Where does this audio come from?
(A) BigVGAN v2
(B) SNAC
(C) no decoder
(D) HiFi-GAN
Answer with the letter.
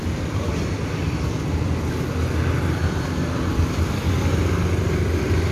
C